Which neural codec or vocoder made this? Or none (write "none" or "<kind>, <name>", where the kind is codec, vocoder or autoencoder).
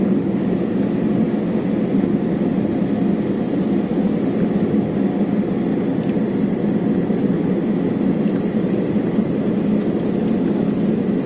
none